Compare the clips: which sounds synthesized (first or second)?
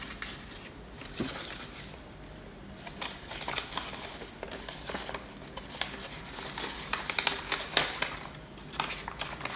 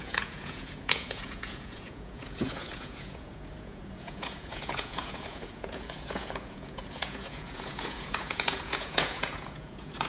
second